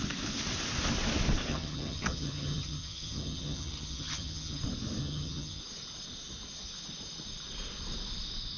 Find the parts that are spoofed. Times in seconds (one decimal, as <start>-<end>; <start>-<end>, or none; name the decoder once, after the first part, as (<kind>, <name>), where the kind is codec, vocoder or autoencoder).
1.5-4.6 (vocoder, HiFi-GAN); 5.0-5.6